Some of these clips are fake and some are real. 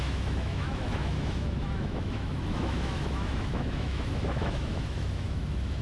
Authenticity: fake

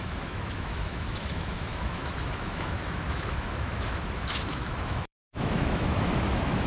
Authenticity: fake